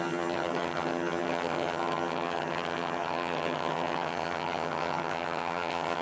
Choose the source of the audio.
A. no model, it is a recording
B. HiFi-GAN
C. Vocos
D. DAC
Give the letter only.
B